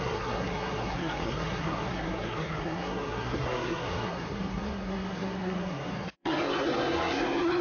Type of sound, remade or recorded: remade